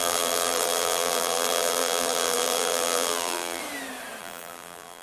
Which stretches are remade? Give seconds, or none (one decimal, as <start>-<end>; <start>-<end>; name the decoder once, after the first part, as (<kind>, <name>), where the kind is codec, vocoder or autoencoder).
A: 0.0-3.6 (vocoder, BigVGAN v2); 4.2-5.0